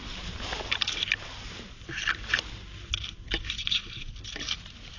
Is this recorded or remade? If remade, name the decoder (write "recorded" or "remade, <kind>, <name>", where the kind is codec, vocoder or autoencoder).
recorded